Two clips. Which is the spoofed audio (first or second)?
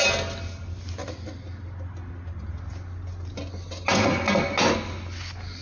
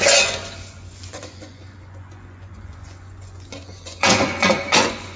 second